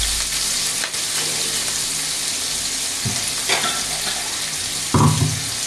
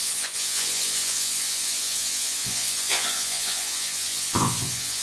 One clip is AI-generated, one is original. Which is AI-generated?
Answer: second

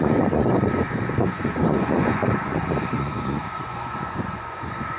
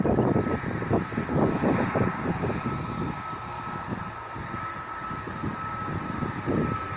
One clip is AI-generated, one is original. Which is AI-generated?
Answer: first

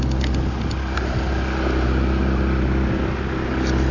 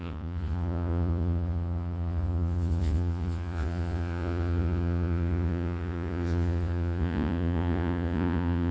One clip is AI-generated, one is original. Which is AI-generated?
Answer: second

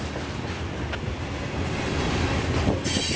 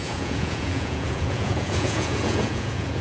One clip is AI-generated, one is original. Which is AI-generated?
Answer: second